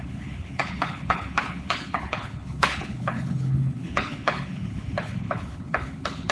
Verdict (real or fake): fake